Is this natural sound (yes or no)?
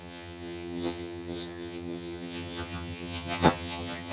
no